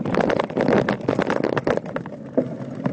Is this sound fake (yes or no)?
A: no